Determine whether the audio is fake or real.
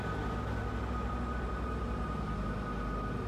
real